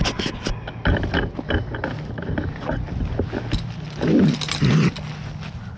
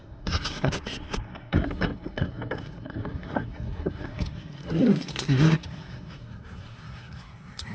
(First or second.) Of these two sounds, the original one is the first